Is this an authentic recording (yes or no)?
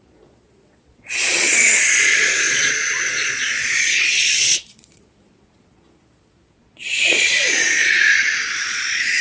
no